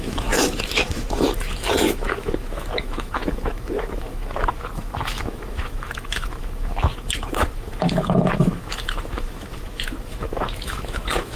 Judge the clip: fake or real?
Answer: fake